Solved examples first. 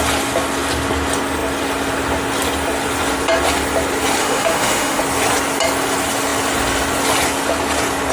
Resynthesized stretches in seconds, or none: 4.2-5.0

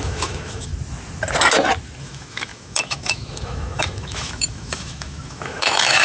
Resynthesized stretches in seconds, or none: 0.0-0.7; 2.0-6.0

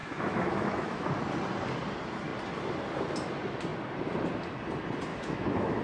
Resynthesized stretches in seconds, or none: 0.0-1.1; 5.1-5.8

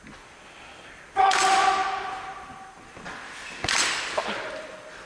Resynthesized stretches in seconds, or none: none

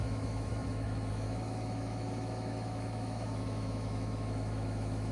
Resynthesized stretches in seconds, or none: 0.0-5.1